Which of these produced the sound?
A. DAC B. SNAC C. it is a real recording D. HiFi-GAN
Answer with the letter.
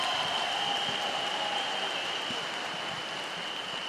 C